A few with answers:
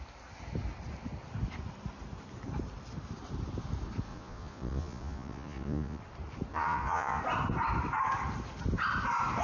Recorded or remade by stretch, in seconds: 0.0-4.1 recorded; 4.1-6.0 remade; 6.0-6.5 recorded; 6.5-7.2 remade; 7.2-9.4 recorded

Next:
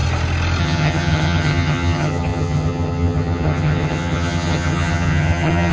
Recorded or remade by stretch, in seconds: 0.0-0.6 recorded; 0.6-5.7 remade

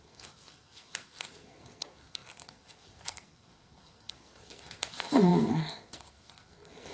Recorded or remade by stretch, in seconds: 0.0-6.9 remade